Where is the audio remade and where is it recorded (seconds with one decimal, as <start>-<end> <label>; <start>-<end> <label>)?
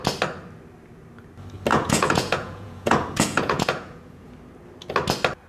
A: 0.0-1.7 recorded; 1.7-4.3 remade; 4.3-5.5 recorded